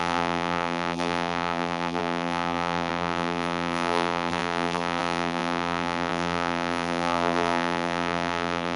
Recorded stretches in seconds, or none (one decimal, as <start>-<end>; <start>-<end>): none